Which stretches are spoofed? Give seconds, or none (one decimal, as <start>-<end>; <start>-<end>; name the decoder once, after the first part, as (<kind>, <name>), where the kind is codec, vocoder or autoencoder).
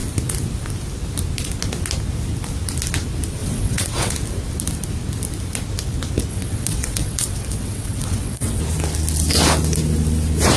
3.4-4.1 (vocoder, WaveNeXt); 6.3-8.6